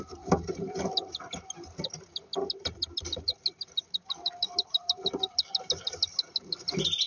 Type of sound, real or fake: real